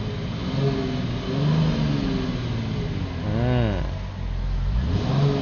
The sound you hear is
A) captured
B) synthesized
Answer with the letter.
A